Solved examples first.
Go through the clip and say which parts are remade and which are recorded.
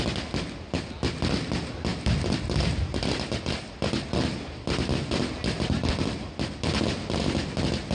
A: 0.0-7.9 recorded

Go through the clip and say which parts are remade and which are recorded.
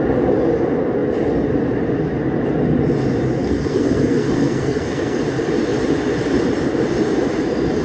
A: 0.0-3.4 recorded; 3.4-5.2 remade; 5.2-7.8 recorded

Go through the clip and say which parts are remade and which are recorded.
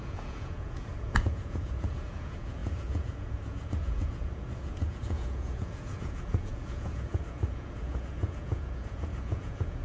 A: 0.0-9.8 remade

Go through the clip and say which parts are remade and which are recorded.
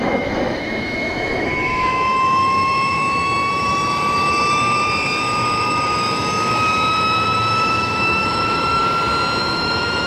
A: 0.0-8.8 remade; 8.8-9.4 recorded; 9.4-10.1 remade